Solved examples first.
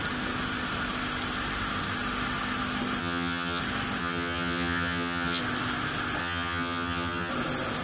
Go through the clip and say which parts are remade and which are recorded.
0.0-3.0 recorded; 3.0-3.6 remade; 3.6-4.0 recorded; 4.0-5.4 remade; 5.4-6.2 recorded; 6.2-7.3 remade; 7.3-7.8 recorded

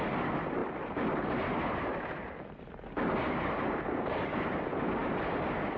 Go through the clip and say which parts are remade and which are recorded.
0.0-5.8 recorded

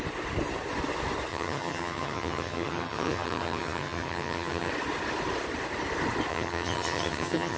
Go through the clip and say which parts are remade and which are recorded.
0.0-1.3 recorded; 1.3-4.7 remade; 4.7-6.3 recorded; 6.3-7.6 remade

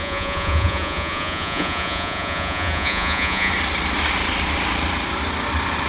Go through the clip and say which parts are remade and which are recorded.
0.0-3.5 remade; 3.5-5.9 recorded

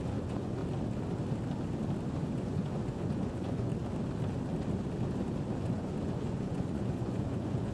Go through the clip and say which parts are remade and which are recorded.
0.0-0.6 remade; 0.6-2.1 recorded; 2.1-3.7 remade; 3.7-5.6 recorded; 5.6-7.7 remade

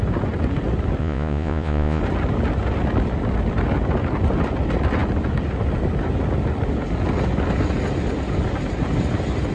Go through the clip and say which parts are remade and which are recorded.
0.0-1.0 recorded; 1.0-2.0 remade; 2.0-9.5 recorded

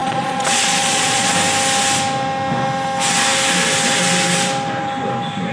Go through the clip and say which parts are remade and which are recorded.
0.0-1.3 remade; 1.3-5.5 recorded

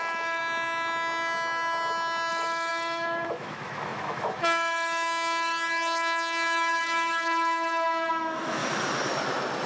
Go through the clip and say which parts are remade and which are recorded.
0.0-0.4 remade; 0.4-2.3 recorded; 2.3-8.6 remade; 8.6-9.7 recorded